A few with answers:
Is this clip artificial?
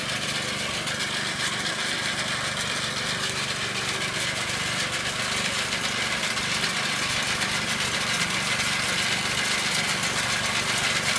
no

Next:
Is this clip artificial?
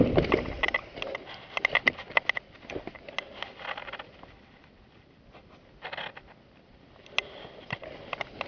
no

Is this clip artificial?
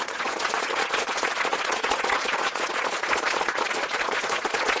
yes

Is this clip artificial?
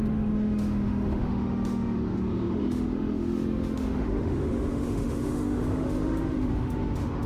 yes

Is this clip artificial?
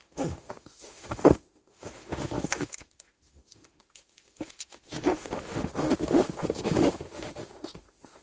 yes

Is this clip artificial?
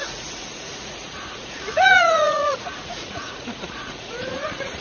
yes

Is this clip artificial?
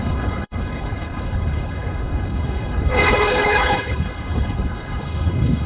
yes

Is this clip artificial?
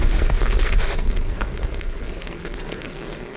yes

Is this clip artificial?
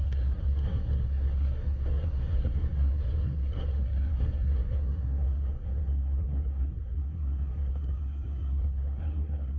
yes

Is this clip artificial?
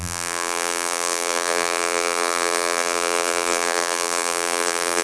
yes